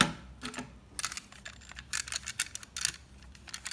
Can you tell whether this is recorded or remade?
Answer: recorded